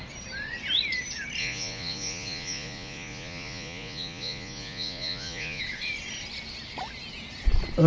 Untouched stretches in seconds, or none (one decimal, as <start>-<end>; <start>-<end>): 0.0-1.4; 5.6-7.9